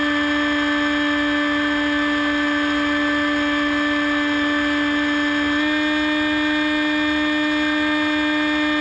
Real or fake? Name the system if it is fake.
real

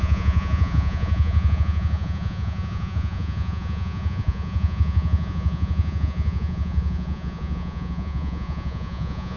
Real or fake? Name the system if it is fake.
fake, vocoder, Vocos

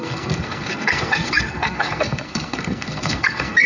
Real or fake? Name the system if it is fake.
fake, codec, SNAC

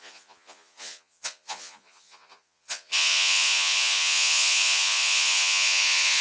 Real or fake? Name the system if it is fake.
fake, vocoder, Vocos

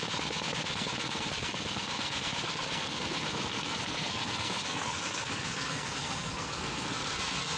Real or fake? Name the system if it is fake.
fake, codec, SNAC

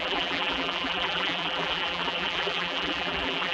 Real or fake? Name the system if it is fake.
fake, vocoder, BigVGAN v2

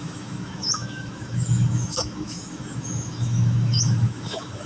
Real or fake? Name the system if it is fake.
fake, autoencoder, DAC-VAE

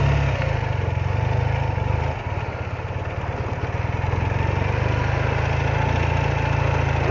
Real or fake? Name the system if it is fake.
real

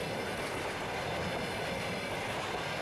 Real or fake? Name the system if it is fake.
fake, vocoder, BigVGAN v2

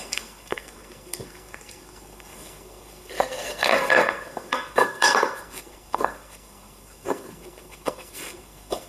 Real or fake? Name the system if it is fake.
fake, codec, SNAC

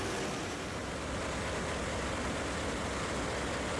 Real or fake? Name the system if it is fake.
real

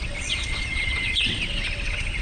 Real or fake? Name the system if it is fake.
fake, vocoder, WaveNeXt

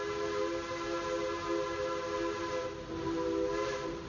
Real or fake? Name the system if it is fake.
real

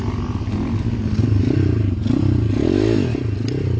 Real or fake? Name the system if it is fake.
real